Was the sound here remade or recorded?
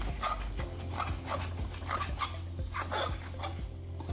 recorded